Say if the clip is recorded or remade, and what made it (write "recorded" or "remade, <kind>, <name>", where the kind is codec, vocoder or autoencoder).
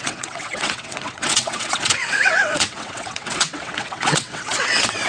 remade, vocoder, WaveNeXt